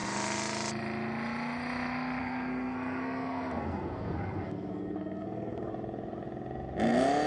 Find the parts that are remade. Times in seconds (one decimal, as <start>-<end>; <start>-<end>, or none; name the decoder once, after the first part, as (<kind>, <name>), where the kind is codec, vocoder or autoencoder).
2.2-5.7 (codec, SNAC)